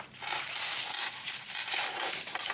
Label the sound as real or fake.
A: real